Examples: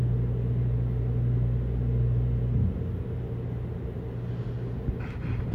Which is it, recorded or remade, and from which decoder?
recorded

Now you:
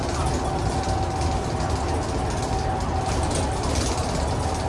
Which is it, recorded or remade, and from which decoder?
recorded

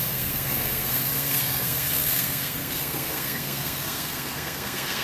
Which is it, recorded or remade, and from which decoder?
remade, codec, SNAC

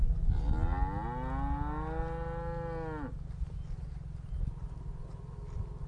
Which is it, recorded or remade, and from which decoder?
recorded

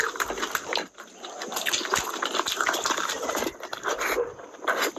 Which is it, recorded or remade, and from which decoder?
recorded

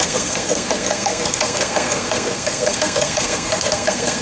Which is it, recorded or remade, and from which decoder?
remade, codec, SNAC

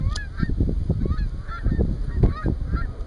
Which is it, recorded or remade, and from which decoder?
recorded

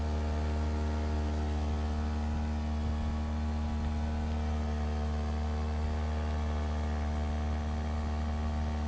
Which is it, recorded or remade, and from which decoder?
recorded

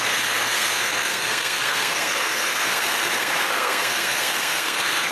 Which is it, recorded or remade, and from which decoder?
remade, codec, SNAC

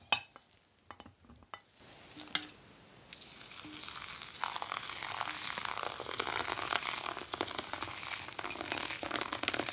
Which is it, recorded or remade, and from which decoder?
recorded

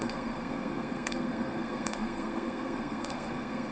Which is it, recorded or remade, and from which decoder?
remade, codec, SNAC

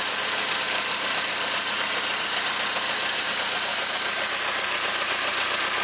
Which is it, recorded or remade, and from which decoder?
recorded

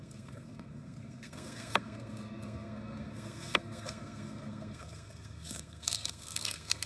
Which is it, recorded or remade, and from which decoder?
remade, codec, SNAC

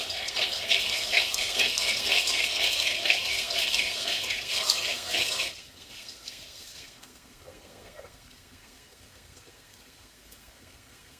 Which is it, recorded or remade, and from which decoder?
remade, codec, SNAC